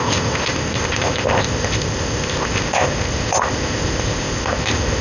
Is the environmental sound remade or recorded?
remade